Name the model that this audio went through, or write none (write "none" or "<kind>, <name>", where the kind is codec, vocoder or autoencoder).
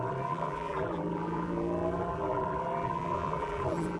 vocoder, BigVGAN v2